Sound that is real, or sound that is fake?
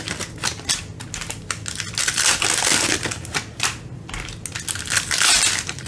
real